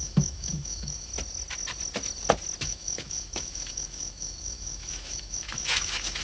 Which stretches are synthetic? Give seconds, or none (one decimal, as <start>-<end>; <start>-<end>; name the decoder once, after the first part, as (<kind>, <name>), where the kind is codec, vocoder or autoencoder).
0.0-1.1 (autoencoder, DAC-VAE); 2.6-6.2